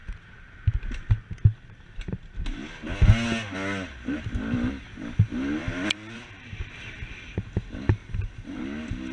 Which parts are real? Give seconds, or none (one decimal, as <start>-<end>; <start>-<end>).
0.0-5.6; 6.6-8.0; 8.6-9.1